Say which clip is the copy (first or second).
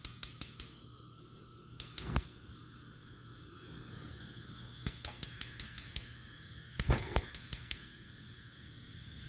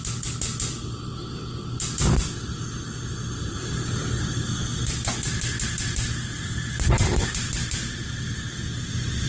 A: first